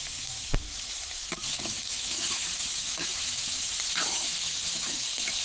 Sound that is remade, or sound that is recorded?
remade